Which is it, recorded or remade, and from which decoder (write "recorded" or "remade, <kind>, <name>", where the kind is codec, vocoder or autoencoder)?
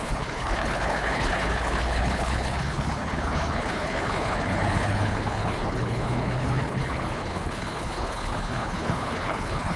remade, codec, HILCodec